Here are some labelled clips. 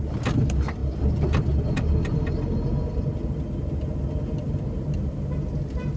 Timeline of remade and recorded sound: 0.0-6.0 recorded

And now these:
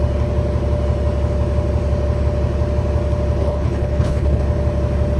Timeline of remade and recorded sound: 0.0-3.4 recorded; 3.4-4.4 remade; 4.4-5.2 recorded